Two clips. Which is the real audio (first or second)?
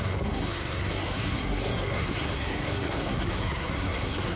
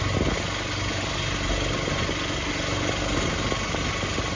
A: second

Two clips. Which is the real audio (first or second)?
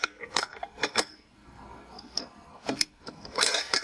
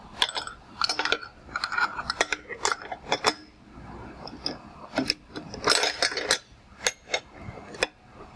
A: second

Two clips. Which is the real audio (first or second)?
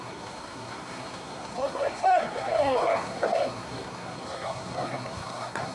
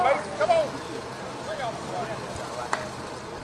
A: second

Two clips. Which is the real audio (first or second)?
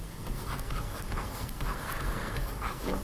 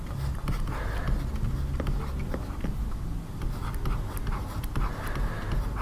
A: second